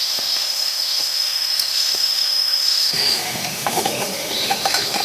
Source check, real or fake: fake